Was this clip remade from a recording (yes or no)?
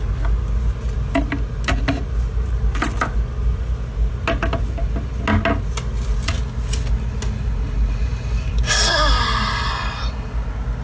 no